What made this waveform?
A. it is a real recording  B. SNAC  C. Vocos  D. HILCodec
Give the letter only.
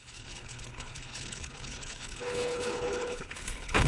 D